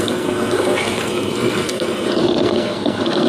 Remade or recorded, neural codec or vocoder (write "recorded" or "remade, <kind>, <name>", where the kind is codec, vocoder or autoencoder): remade, codec, SNAC